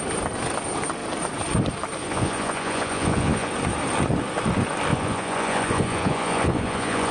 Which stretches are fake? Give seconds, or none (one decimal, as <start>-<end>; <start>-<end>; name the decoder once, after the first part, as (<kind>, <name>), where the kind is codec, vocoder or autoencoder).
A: 2.0-3.5 (vocoder, Vocos); 4.9-7.1